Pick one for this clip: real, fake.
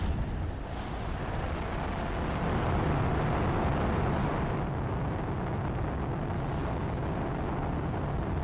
real